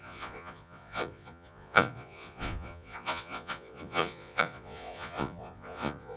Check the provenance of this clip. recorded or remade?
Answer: remade